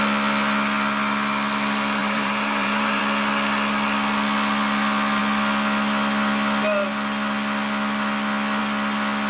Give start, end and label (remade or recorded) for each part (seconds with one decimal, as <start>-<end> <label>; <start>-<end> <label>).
0.0-2.0 recorded; 2.0-3.0 remade; 3.0-9.3 recorded